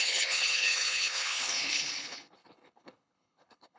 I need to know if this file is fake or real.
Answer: fake